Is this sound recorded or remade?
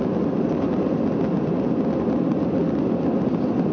recorded